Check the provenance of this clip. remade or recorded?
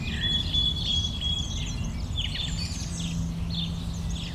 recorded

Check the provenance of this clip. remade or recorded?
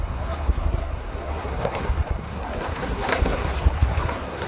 remade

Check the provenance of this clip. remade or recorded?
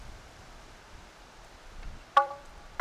remade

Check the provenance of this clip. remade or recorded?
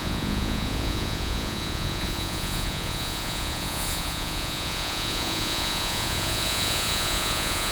remade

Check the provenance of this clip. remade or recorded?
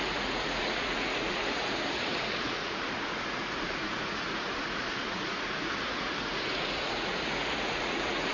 remade